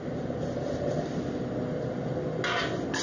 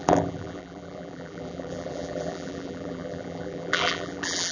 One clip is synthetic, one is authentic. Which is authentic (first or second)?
first